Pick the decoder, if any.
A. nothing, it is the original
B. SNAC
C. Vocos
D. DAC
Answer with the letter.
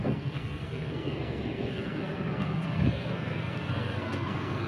B